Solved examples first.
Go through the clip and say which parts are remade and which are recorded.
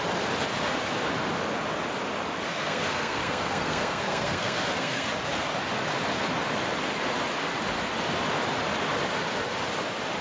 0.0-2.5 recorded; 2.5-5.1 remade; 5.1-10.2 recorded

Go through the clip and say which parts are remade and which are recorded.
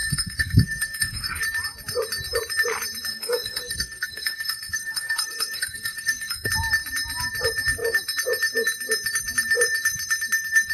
0.0-1.4 remade; 1.4-3.1 recorded; 3.1-6.5 remade; 6.5-10.7 recorded